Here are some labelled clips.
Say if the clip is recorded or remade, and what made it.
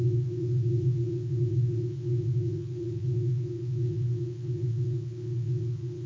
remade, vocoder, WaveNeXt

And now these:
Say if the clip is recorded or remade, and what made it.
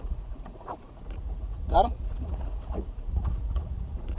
remade, vocoder, Vocos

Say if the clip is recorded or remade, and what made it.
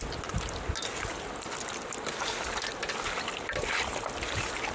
recorded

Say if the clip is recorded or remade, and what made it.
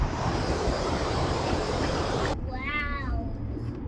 remade, vocoder, BigVGAN v2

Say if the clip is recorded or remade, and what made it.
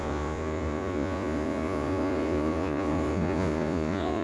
remade, vocoder, Vocos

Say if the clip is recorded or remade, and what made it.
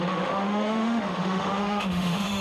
remade, autoencoder, DAC-VAE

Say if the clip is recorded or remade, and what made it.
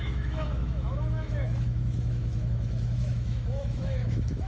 remade, autoencoder, DAC-VAE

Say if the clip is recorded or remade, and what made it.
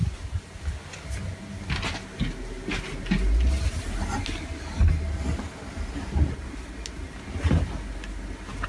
recorded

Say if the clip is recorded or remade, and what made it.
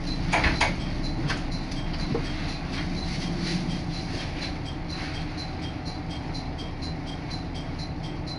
recorded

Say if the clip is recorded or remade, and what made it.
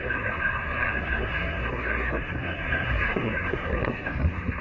remade, codec, SNAC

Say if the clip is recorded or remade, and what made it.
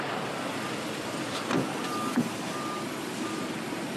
recorded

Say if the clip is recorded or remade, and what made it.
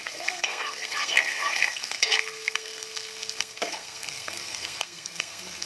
remade, codec, SNAC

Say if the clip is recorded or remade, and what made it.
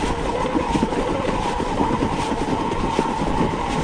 recorded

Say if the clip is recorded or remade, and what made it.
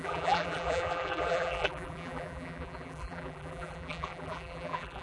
remade, vocoder, BigVGAN v2